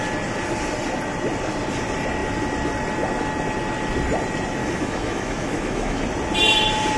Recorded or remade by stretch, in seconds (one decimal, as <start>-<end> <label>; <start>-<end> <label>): 0.0-4.6 recorded; 4.6-6.0 remade; 6.0-7.0 recorded